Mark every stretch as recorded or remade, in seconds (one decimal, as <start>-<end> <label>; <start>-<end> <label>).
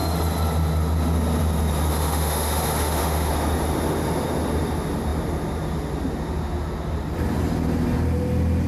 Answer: 0.0-1.9 recorded; 1.9-3.3 remade; 3.3-8.7 recorded